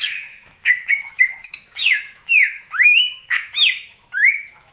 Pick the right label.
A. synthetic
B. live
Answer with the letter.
A